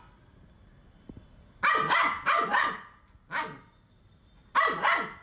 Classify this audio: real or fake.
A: real